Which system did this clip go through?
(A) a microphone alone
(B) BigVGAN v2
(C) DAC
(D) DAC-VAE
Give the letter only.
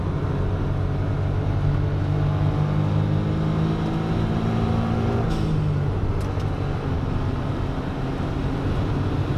A